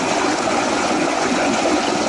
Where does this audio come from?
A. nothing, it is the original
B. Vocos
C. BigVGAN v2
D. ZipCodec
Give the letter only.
B